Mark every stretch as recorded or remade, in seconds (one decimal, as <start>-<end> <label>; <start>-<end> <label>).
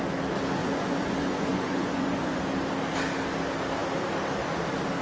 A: 0.0-0.6 recorded; 0.6-2.4 remade; 2.4-5.0 recorded